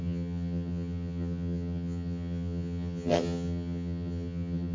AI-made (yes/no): yes